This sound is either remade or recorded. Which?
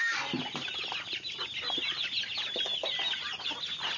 recorded